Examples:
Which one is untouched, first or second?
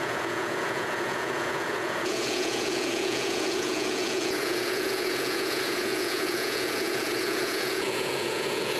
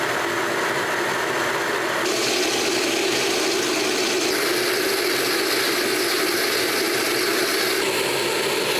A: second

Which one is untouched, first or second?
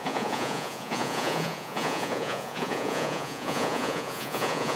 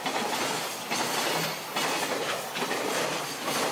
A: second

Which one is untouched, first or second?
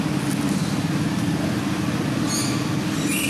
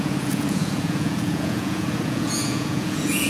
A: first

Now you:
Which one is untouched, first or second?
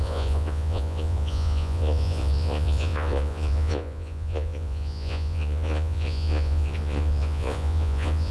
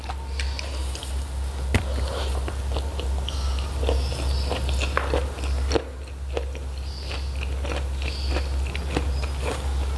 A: second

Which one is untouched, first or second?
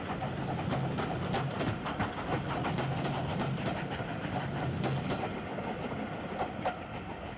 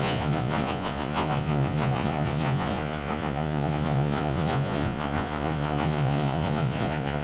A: first